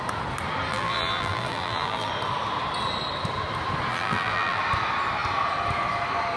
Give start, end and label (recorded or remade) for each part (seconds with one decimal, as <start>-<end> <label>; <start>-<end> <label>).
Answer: 0.0-0.7 recorded; 0.7-2.1 remade; 2.1-3.9 recorded; 3.9-4.6 remade; 4.6-6.4 recorded